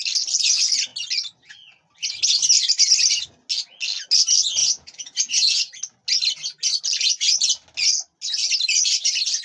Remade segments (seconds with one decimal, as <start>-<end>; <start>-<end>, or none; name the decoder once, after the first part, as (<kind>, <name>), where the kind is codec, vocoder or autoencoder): 4.6-5.7 (vocoder, Vocos)